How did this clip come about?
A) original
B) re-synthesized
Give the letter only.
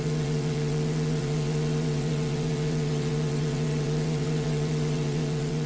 B